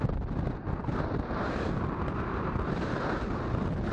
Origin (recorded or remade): recorded